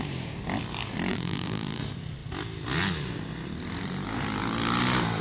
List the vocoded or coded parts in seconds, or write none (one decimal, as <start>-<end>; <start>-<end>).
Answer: 1.1-1.8